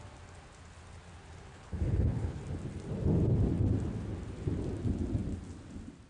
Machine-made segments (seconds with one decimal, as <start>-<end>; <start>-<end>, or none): 1.5-2.4